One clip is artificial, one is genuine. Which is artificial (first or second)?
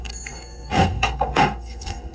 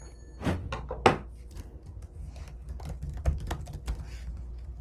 first